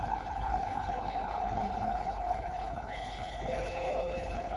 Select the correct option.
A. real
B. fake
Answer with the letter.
B